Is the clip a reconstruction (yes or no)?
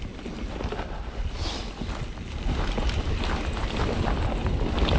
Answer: no